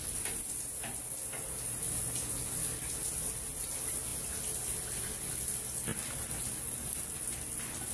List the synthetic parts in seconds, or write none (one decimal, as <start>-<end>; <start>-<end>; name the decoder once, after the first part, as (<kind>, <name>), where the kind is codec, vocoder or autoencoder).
none